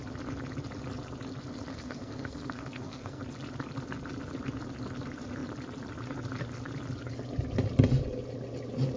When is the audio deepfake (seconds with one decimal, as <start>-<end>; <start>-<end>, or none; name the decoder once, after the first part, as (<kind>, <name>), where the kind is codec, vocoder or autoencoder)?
1.7-3.2 (codec, SNAC)